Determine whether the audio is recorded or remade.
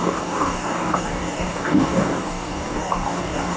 remade